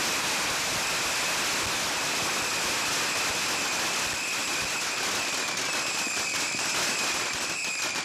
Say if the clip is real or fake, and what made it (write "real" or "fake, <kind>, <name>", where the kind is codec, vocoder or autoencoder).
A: real